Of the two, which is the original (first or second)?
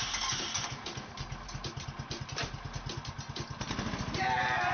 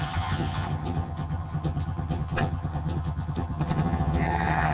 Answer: first